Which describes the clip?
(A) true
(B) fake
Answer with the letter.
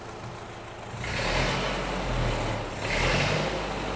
A